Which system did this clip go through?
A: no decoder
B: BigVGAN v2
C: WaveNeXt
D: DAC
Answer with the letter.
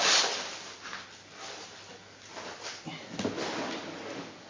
A